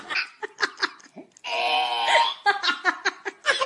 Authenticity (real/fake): real